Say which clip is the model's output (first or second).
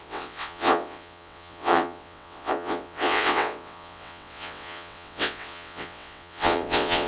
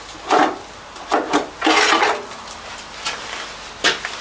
first